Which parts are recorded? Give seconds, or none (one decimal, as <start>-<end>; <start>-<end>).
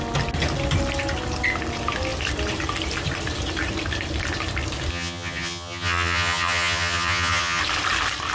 0.0-4.9; 7.6-8.3